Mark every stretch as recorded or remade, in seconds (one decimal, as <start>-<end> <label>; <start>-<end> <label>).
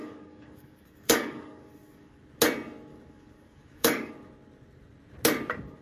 0.0-2.2 remade; 2.2-2.9 recorded; 2.9-4.1 remade; 4.1-5.8 recorded